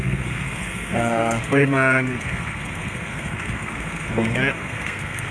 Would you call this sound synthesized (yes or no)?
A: yes